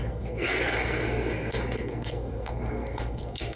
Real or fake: fake